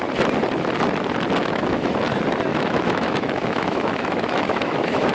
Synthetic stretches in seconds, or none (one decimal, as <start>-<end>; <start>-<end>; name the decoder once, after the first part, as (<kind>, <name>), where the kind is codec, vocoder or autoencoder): 1.4-1.9 (autoencoder, DAC-VAE); 2.5-5.1